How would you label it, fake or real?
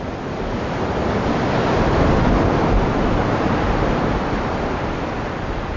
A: real